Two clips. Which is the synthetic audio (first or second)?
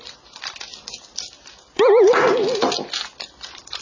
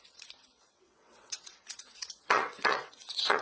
second